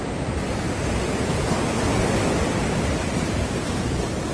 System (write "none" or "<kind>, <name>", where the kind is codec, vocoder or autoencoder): none